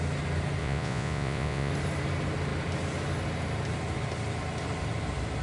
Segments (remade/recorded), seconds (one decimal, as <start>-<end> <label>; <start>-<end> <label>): 0.0-0.6 recorded; 0.6-1.7 remade; 1.7-5.4 recorded